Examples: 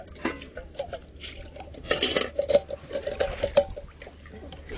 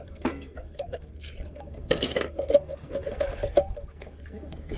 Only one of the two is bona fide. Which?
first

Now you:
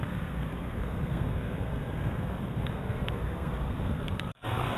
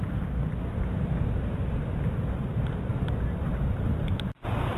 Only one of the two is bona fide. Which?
second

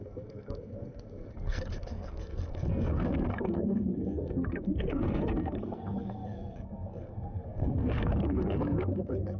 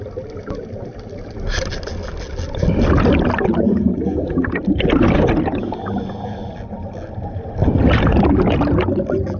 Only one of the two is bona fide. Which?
second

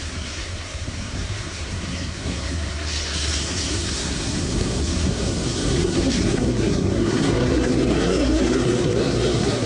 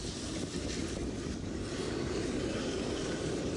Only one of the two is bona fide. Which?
second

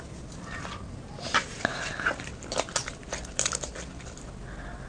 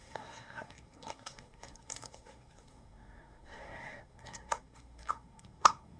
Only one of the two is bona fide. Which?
first